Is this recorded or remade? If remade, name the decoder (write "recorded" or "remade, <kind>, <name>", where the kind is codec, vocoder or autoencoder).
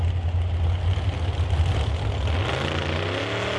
recorded